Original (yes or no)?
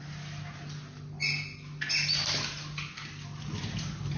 yes